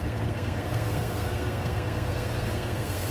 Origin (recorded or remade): remade